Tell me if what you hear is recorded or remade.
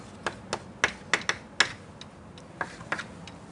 recorded